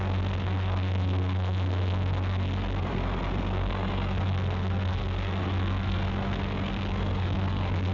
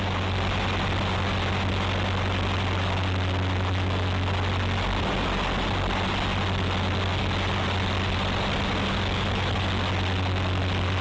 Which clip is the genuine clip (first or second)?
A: second